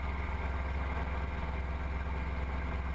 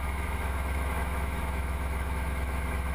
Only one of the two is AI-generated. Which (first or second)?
second